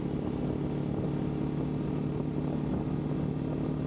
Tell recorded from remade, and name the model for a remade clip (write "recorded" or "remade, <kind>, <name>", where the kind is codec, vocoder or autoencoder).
recorded